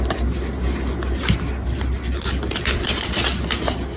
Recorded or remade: recorded